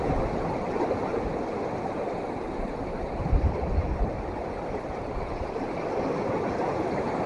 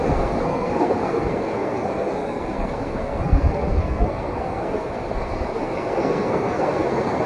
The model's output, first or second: second